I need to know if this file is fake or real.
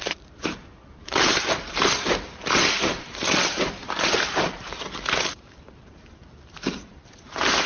fake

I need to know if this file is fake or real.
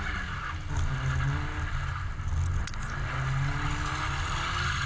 real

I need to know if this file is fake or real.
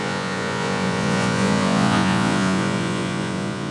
fake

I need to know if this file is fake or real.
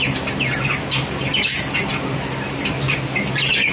real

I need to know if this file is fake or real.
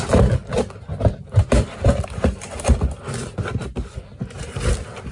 real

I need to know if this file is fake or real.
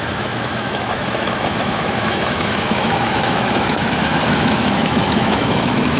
fake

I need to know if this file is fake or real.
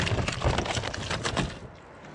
real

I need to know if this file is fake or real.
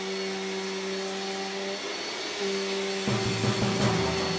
real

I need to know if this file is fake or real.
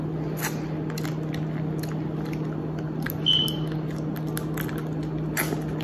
real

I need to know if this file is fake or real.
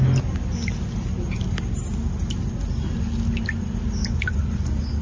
real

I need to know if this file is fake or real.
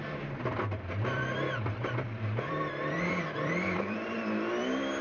fake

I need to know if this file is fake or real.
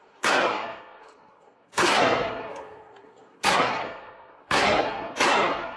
fake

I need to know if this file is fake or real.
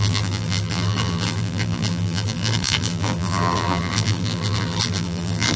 fake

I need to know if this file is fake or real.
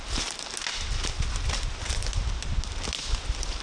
real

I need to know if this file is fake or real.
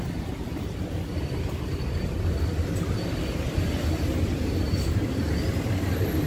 real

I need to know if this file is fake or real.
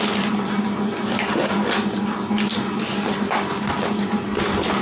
real